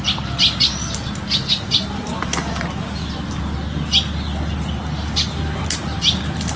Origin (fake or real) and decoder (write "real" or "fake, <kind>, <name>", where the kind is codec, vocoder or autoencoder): real